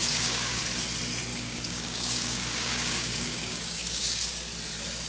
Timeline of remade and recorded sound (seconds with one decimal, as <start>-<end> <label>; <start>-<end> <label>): 0.0-0.6 remade; 0.6-1.3 recorded; 1.3-4.4 remade; 4.4-5.1 recorded